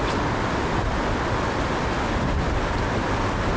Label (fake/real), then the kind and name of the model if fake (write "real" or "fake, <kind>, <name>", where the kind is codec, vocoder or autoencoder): real